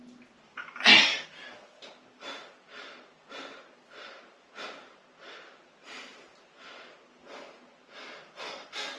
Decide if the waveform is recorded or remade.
recorded